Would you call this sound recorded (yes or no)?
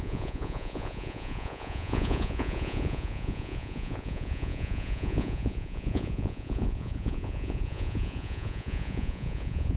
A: no